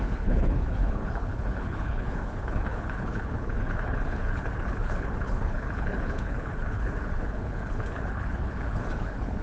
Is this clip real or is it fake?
fake